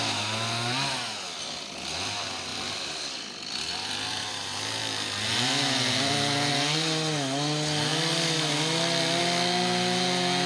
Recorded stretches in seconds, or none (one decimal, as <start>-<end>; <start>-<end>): 0.0-2.5; 4.3-4.8; 6.5-7.9; 9.2-10.5